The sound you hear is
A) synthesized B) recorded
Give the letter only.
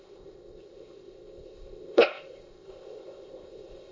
A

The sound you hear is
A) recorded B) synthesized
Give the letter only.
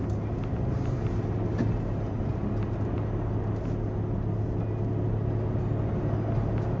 A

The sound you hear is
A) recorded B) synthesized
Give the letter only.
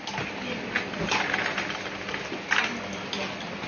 A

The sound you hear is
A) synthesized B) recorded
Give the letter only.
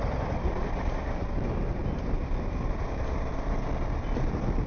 B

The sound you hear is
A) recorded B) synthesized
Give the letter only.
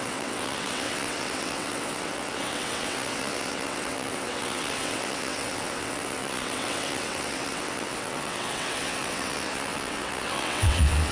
B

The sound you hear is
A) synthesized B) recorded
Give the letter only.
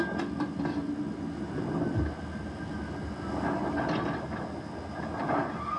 B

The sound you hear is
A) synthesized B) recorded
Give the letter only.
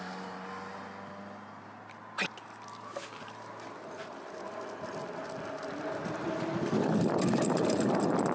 B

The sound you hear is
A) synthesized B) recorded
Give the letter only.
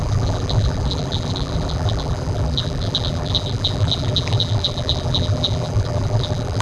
A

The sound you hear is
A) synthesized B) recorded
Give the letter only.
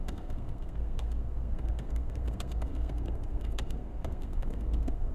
A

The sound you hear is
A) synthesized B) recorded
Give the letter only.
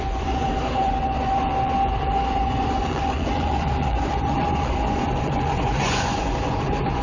A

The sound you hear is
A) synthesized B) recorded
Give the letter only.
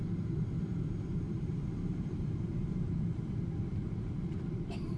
A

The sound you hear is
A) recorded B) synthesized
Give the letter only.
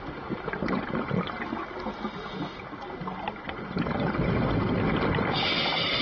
A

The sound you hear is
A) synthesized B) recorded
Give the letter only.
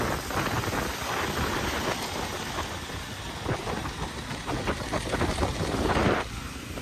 B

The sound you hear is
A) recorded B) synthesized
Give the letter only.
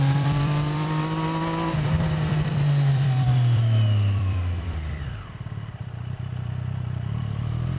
B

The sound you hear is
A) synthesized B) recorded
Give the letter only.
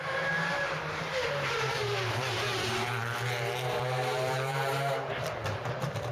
A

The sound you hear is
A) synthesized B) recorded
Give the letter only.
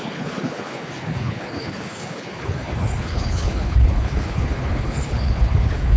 A